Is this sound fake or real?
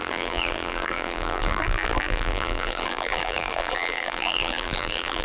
fake